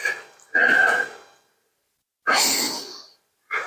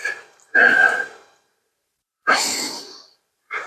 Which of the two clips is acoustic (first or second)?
first